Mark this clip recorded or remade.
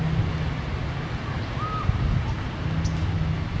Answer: recorded